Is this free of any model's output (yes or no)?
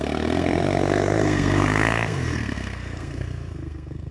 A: no